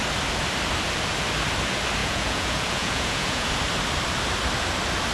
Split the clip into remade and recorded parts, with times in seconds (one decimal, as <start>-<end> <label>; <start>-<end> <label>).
0.0-2.0 recorded; 2.0-3.5 remade; 3.5-5.1 recorded